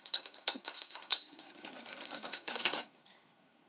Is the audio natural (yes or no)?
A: no